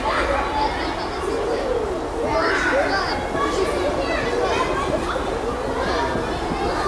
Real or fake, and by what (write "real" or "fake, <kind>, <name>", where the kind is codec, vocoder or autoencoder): real